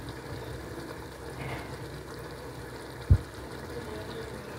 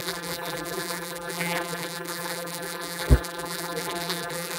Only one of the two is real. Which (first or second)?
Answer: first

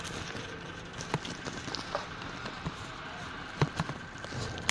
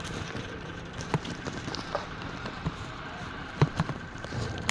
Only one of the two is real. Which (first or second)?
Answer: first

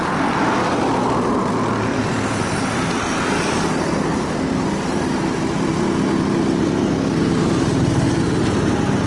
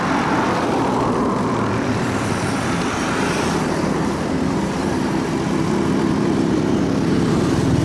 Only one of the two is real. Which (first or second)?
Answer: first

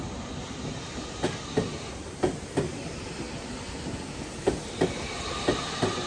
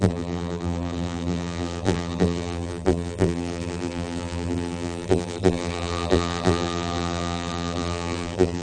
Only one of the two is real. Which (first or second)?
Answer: first